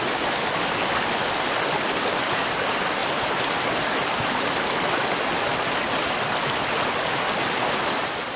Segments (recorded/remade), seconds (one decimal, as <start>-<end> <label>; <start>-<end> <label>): 0.0-8.4 recorded